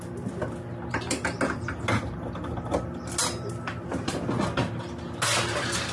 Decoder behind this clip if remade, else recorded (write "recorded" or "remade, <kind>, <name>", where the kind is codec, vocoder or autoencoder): recorded